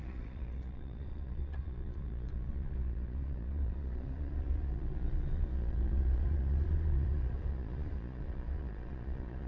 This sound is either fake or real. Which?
fake